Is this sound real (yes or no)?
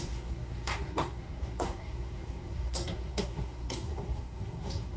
no